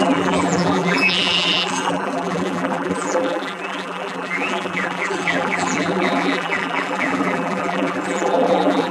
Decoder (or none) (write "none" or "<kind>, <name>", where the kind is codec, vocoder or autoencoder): vocoder, BigVGAN v2